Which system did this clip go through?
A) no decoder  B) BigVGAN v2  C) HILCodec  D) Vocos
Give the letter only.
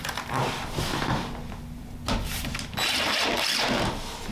A